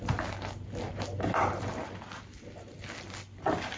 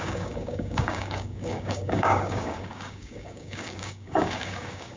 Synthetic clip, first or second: second